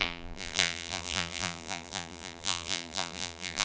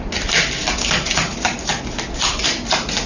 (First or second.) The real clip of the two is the second